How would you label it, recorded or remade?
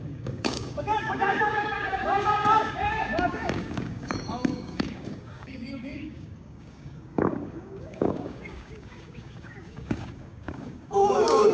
remade